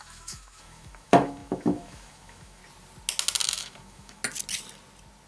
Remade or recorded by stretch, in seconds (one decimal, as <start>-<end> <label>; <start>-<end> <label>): 0.0-2.6 remade; 2.6-3.4 recorded; 3.4-4.2 remade; 4.2-5.3 recorded